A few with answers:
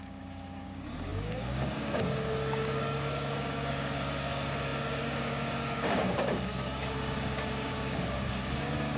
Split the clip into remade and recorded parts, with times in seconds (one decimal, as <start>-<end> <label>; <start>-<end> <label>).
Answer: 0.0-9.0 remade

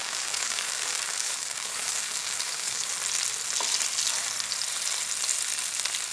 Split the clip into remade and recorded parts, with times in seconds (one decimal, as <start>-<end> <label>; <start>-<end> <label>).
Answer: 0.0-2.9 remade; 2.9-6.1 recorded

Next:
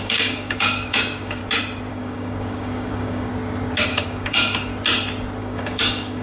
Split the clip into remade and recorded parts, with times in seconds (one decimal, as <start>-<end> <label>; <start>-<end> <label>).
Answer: 0.0-1.4 remade; 1.4-1.9 recorded; 1.9-3.3 remade; 3.3-3.9 recorded; 3.9-4.7 remade; 4.7-5.4 recorded; 5.4-6.2 remade

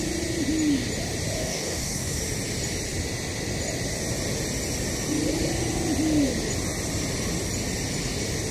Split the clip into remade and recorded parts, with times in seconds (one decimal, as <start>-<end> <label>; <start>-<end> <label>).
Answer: 0.0-1.4 recorded; 1.4-2.2 remade; 2.2-8.5 recorded